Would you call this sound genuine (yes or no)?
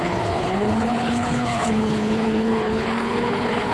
no